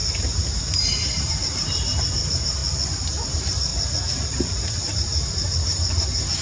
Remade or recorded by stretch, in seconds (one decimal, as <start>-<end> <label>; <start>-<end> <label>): 0.0-2.6 remade; 2.6-3.3 recorded; 3.3-3.7 remade; 3.7-4.7 recorded; 4.7-6.4 remade